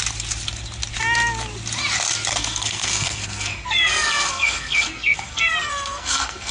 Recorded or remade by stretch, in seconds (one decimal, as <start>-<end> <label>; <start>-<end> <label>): 0.0-2.3 recorded; 2.3-6.5 remade